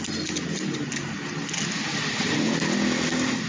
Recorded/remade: recorded